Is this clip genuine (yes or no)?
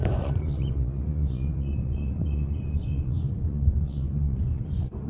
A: no